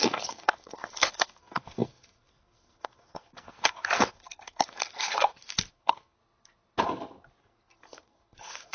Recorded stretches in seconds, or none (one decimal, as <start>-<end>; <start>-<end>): 6.2-7.4